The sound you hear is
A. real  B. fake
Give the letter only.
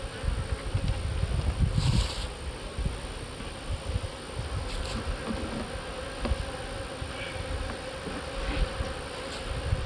A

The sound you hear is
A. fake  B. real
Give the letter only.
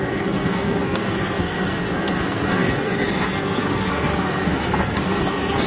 A